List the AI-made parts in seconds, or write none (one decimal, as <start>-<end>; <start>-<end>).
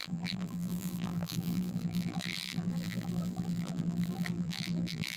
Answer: 0.0-5.2